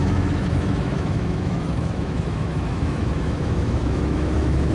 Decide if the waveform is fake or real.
fake